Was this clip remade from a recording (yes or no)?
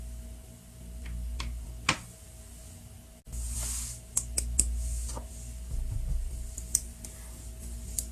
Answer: no